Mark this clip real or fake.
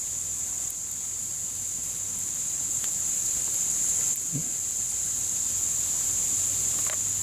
real